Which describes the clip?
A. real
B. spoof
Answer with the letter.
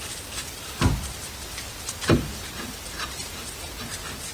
A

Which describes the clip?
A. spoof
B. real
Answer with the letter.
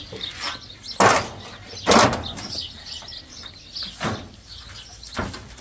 B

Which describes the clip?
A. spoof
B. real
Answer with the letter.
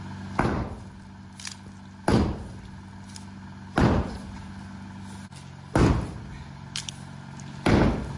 B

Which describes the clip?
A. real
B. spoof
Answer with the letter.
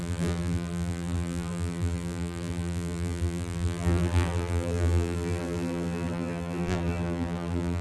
B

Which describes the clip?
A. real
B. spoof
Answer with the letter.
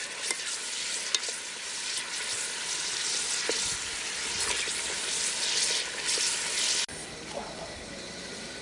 A